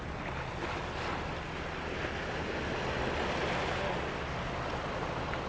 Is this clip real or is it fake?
real